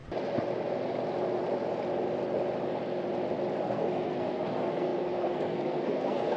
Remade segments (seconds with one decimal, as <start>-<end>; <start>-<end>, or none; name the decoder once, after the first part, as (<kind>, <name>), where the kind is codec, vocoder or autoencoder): 3.6-6.4 (codec, SNAC)